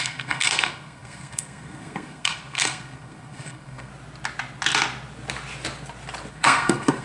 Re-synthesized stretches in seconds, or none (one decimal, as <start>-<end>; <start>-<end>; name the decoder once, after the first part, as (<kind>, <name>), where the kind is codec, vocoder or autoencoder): 0.0-3.9 (codec, SNAC); 6.3-7.0